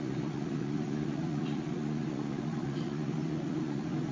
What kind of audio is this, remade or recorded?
remade